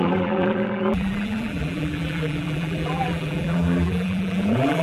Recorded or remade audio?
remade